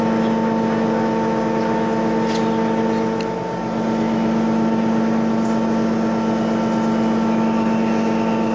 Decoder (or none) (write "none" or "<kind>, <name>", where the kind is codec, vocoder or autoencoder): none